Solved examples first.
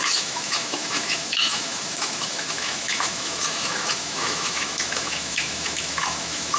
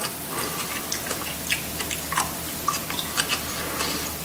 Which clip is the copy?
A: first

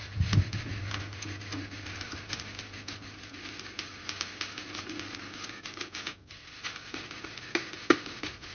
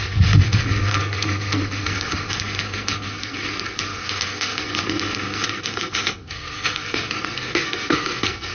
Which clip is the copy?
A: second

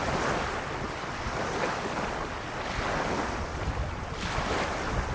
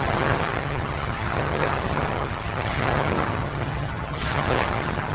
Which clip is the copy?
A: second